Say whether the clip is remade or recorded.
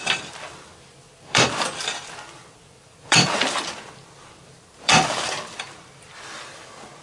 remade